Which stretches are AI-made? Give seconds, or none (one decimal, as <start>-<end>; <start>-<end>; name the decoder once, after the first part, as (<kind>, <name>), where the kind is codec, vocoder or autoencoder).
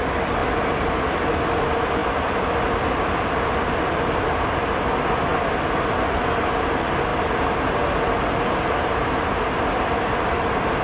0.4-1.2 (vocoder, BigVGAN v2); 2.0-4.2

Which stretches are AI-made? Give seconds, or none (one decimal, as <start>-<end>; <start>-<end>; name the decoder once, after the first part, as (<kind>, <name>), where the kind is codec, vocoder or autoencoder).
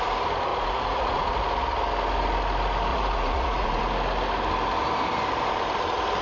0.5-1.4 (vocoder, Vocos); 2.9-3.8